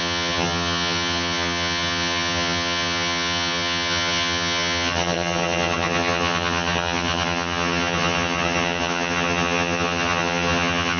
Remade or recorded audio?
remade